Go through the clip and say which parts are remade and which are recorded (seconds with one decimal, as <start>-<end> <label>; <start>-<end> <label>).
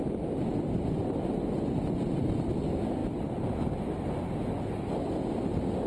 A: 0.0-5.9 recorded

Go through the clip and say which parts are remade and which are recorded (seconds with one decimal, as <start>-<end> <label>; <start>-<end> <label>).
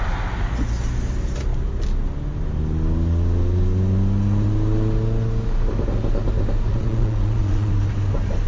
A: 0.0-6.7 recorded; 6.7-7.7 remade; 7.7-8.5 recorded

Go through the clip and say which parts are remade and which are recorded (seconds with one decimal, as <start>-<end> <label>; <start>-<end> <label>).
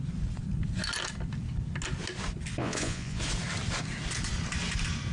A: 0.0-2.6 recorded; 2.6-3.2 remade; 3.2-5.1 recorded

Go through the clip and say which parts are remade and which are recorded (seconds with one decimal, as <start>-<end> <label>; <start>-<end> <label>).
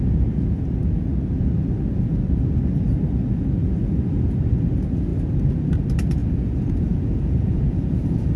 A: 0.0-6.2 recorded; 6.2-8.4 remade